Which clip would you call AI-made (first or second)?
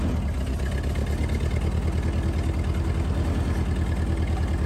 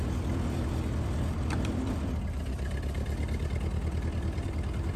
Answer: second